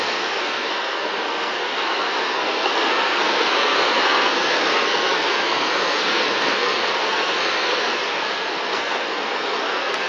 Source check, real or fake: fake